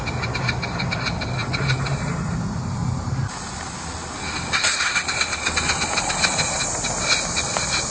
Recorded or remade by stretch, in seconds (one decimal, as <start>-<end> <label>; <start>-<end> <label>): 0.0-7.9 recorded